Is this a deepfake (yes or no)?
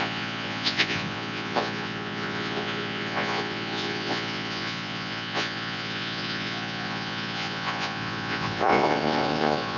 yes